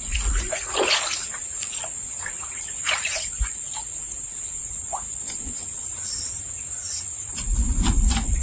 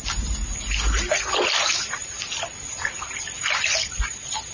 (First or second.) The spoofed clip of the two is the first